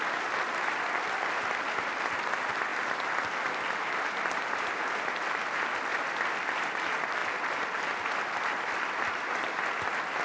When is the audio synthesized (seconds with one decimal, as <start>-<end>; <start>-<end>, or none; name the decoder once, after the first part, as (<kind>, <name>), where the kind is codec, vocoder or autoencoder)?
5.9-6.6 (vocoder, BigVGAN v2); 7.2-10.2